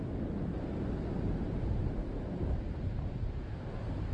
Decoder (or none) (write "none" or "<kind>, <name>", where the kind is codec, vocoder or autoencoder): none